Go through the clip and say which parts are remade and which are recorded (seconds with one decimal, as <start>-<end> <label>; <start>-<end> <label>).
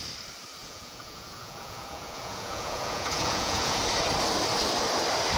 0.0-0.6 recorded; 0.6-3.8 remade; 3.8-5.4 recorded